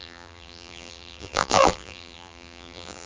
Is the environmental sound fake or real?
fake